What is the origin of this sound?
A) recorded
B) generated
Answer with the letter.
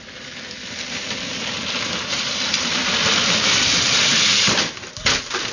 B